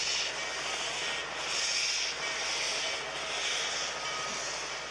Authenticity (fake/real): real